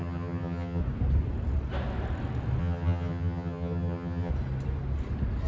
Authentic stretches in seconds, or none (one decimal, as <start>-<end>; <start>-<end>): 0.8-2.6; 4.3-5.5